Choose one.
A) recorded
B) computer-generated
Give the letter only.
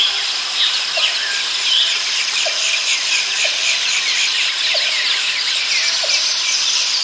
A